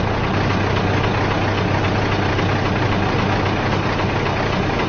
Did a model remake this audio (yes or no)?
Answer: no